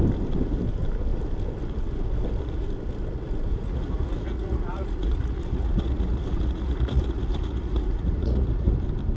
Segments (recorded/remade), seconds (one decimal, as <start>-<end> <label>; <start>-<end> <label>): 0.0-3.5 recorded; 3.5-8.7 remade; 8.7-9.2 recorded